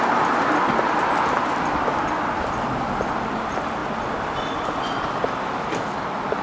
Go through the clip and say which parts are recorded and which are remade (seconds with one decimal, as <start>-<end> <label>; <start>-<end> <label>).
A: 0.0-6.4 recorded